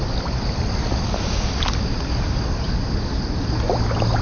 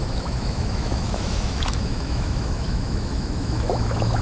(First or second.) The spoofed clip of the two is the second